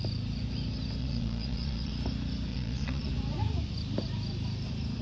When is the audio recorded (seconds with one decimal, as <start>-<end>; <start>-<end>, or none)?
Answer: 0.0-1.0; 1.9-2.5; 3.1-5.0